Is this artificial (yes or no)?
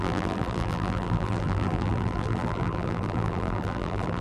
yes